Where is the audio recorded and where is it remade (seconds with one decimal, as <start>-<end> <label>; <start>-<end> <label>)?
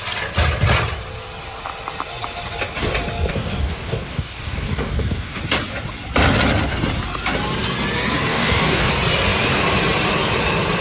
0.0-3.3 recorded; 3.3-5.4 remade; 5.4-8.3 recorded; 8.3-8.9 remade; 8.9-10.8 recorded